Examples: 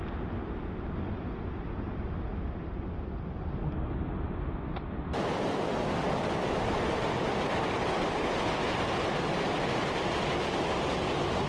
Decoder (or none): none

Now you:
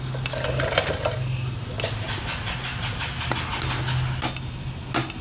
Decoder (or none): none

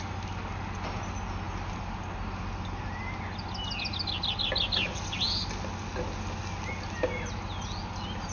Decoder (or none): none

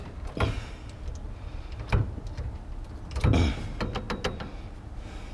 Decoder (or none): none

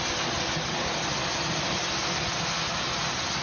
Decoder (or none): none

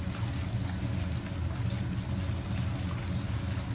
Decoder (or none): none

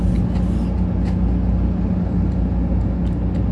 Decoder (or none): none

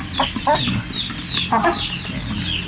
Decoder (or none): none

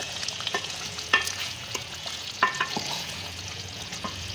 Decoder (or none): vocoder, Vocos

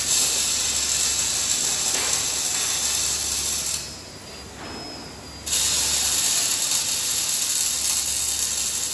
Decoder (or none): none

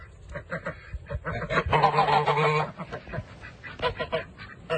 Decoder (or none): none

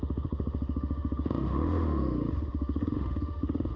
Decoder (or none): autoencoder, DAC-VAE